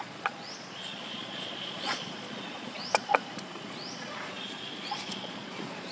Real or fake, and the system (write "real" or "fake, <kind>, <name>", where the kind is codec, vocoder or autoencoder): fake, vocoder, Vocos